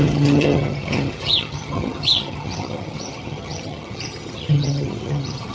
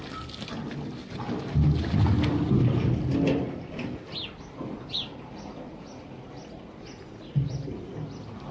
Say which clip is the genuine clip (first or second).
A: second